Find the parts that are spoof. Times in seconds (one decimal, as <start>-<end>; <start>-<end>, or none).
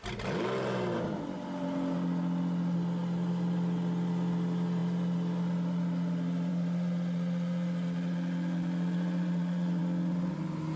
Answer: none